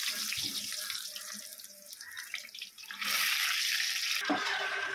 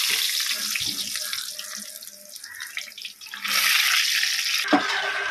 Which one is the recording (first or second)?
second